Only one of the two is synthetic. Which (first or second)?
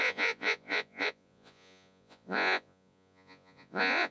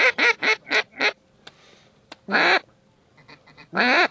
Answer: first